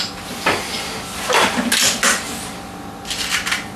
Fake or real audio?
real